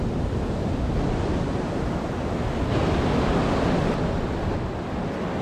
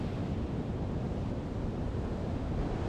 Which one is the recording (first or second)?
first